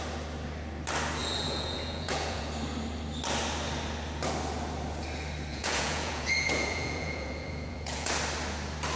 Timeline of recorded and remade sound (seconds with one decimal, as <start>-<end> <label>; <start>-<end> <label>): 0.0-1.2 recorded; 1.2-2.4 remade; 2.4-5.5 recorded; 5.5-8.1 remade; 8.1-9.0 recorded